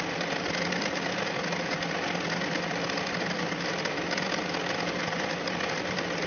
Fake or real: real